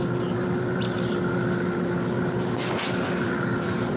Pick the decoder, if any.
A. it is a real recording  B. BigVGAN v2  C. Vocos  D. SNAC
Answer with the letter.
A